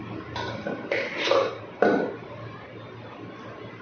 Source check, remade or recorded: recorded